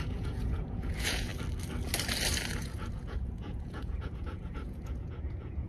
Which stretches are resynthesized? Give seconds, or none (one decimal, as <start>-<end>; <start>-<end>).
0.0-1.3; 2.6-5.7